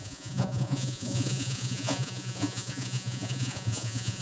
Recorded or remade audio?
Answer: remade